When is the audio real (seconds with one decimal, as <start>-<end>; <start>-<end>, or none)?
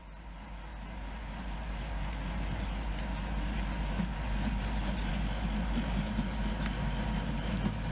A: 0.0-7.9